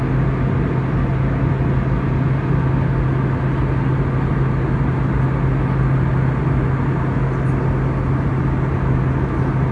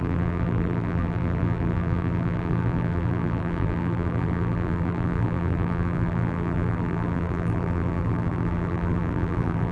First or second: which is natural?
first